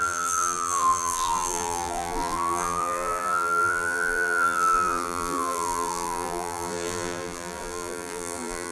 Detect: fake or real fake